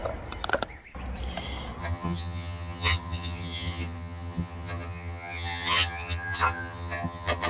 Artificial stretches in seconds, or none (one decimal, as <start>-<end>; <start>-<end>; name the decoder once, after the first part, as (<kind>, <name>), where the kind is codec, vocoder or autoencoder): 1.8-7.5 (vocoder, HiFi-GAN)